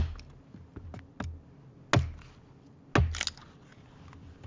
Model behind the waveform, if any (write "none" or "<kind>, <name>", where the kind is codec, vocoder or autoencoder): none